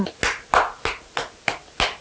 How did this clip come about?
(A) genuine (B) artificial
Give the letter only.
A